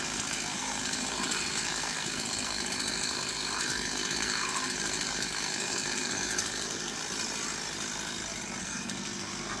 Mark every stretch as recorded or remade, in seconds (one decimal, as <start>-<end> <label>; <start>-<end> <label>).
0.0-7.0 remade; 7.0-8.6 recorded; 8.6-9.6 remade